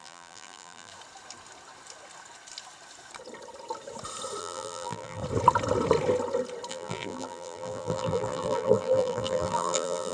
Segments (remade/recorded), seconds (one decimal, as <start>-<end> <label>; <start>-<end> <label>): 0.0-0.9 remade; 0.9-4.4 recorded; 4.4-5.2 remade; 5.2-6.7 recorded; 6.7-10.1 remade

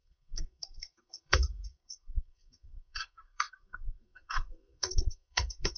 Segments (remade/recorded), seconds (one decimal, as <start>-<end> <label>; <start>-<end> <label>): 0.0-5.8 remade